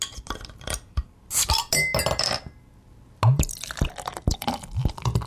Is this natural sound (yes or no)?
yes